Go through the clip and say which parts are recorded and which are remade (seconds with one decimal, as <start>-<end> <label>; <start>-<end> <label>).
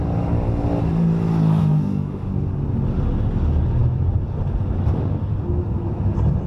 0.0-1.6 recorded; 1.6-2.3 remade; 2.3-6.5 recorded